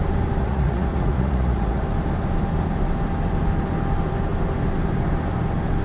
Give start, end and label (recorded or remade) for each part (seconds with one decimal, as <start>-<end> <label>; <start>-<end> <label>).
0.0-0.4 recorded; 0.4-1.8 remade; 1.8-5.8 recorded